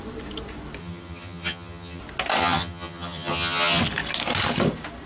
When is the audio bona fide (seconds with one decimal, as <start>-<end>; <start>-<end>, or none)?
0.0-0.8; 2.0-2.4; 3.8-5.1